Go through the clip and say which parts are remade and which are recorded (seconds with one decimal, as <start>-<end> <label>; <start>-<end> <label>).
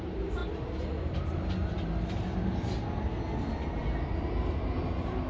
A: 0.0-5.3 recorded